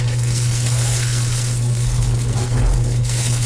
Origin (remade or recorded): remade